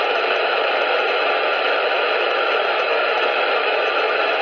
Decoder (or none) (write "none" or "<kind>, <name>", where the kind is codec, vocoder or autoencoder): autoencoder, DAC-VAE